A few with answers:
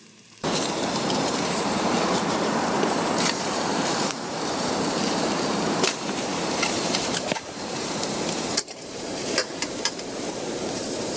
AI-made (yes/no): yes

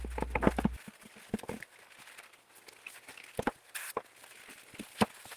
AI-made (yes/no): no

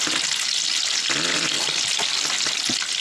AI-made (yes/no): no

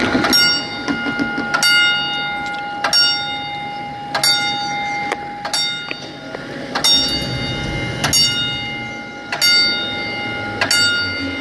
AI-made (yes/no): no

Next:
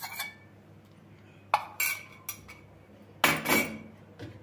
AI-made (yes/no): no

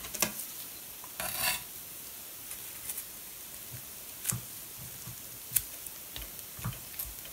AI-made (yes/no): no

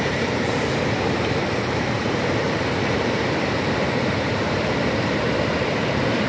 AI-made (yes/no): yes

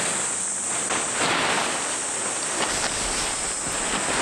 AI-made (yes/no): no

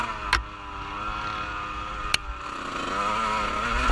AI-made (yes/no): no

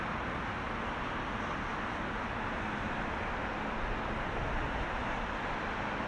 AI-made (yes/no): no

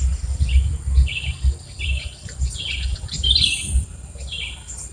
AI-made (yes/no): yes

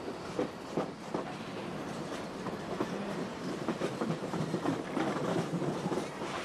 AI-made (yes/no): yes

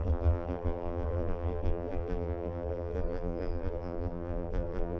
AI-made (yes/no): yes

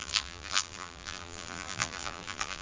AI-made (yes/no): yes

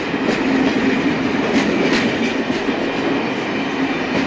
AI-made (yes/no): no